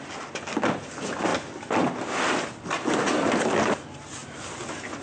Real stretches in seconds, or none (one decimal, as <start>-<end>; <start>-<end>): 0.0-5.0